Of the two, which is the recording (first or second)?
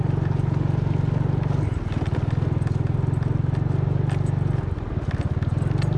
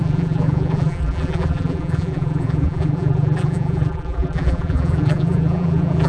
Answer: first